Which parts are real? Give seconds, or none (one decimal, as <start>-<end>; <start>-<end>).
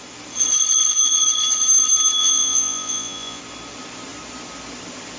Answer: 0.0-2.2; 3.4-5.2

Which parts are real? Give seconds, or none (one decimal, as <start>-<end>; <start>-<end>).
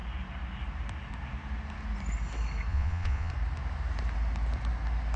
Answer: 0.0-2.7; 3.3-5.2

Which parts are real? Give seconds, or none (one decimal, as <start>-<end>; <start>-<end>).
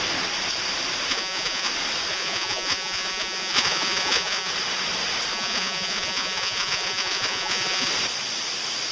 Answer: 0.0-1.1; 1.7-2.1; 4.5-5.3; 7.9-8.9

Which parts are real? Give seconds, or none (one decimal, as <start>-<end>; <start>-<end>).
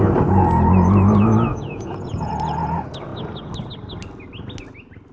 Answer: 0.0-1.5; 2.3-5.1